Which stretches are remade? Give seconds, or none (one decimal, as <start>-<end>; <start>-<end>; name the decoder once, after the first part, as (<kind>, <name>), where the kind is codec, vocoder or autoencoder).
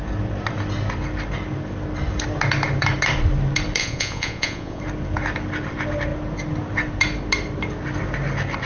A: 3.8-4.8 (vocoder, Vocos)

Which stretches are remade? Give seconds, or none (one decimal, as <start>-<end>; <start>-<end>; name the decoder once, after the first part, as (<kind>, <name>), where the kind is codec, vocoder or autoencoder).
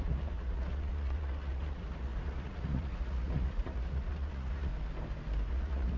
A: 0.0-4.7 (vocoder, Vocos); 5.5-6.0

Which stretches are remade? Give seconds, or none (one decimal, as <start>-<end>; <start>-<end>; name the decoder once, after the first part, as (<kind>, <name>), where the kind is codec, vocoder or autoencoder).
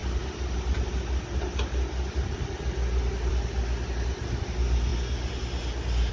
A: none